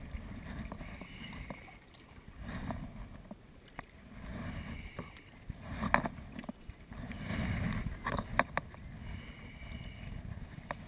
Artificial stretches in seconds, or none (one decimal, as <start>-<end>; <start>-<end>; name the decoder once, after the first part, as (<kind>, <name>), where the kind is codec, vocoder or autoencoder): none